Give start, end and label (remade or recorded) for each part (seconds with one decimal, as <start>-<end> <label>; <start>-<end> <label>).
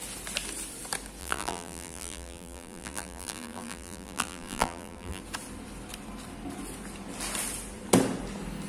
0.0-1.2 recorded; 1.2-5.2 remade; 5.2-8.7 recorded